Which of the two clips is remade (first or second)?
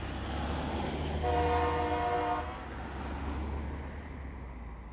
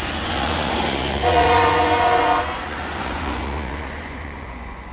second